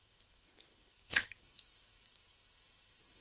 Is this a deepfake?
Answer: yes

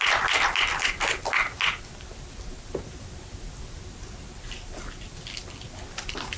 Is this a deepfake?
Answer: no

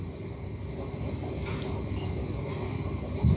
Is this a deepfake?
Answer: no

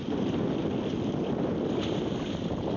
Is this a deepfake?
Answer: no